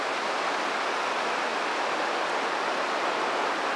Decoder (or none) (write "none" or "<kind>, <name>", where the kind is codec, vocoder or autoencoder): none